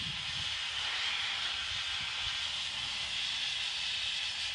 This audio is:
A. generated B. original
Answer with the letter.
B